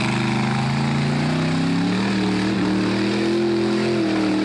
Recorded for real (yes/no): yes